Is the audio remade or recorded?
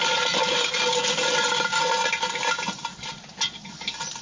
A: recorded